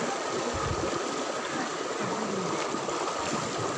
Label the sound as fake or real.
real